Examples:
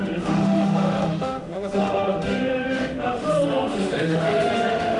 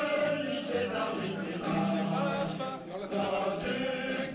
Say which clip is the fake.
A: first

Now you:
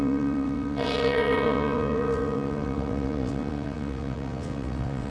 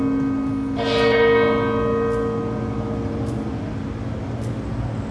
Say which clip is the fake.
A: first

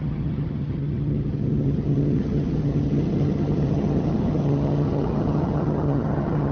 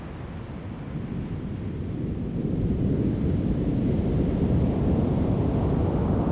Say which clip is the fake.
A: first